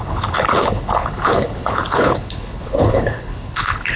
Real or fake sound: fake